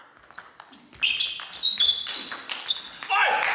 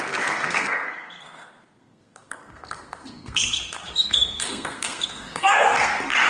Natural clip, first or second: first